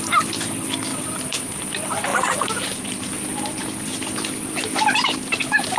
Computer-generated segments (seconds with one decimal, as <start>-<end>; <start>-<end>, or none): 0.0-0.9; 1.7-2.1